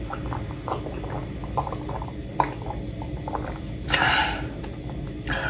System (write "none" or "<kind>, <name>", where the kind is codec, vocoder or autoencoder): none